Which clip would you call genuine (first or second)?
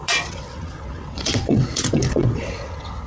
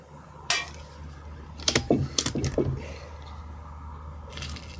second